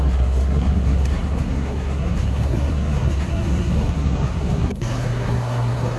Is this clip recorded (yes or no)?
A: no